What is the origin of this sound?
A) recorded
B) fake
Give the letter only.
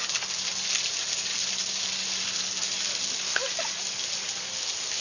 A